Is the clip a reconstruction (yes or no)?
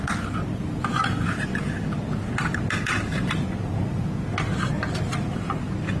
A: no